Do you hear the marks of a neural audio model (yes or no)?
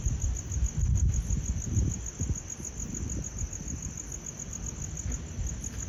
no